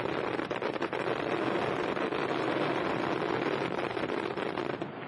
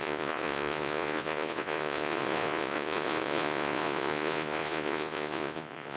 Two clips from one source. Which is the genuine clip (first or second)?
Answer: first